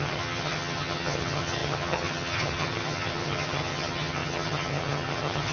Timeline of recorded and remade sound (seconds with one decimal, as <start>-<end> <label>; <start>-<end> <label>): 0.0-5.5 remade